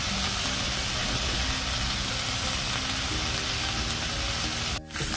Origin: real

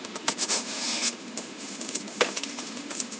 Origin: fake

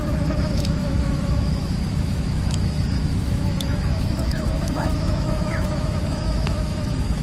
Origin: fake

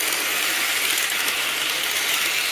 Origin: real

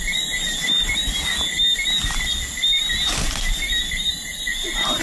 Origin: real